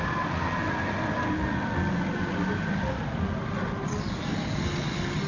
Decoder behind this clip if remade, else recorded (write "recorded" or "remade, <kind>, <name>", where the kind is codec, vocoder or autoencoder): recorded